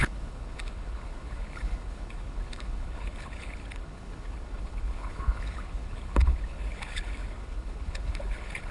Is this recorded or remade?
remade